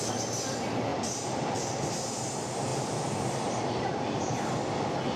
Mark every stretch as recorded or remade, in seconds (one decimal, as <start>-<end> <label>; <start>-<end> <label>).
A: 0.0-0.9 recorded; 0.9-1.9 remade; 1.9-2.7 recorded; 2.7-4.5 remade; 4.5-5.2 recorded